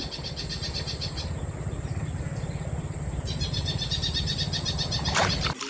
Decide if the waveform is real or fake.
real